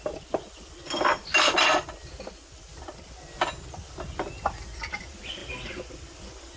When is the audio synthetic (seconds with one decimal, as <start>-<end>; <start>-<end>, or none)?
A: none